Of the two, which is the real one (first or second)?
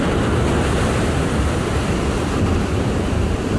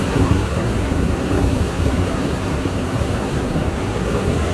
first